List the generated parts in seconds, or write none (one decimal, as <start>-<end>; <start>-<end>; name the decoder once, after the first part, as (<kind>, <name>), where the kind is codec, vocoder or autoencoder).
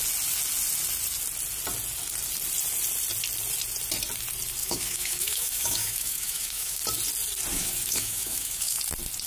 4.6-6.8 (autoencoder, DAC-VAE); 7.5-8.8